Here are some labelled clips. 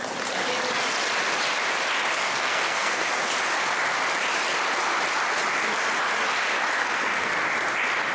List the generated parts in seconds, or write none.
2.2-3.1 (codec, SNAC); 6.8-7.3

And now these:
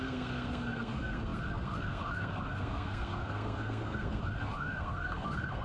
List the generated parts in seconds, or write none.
0.0-5.6 (codec, SNAC)

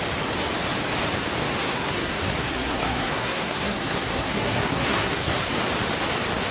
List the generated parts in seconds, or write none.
1.6-5.5 (codec, SNAC)

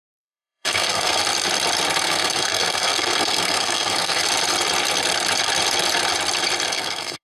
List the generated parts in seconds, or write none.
0.0-1.2 (codec, SNAC); 2.0-4.2; 6.7-7.2

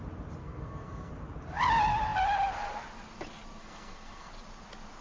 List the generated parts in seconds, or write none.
0.4-1.1 (codec, SNAC); 3.6-4.3